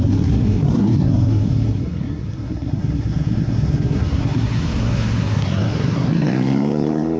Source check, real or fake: fake